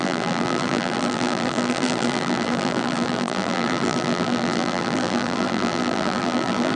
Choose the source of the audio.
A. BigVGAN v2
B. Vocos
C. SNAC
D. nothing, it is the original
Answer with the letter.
A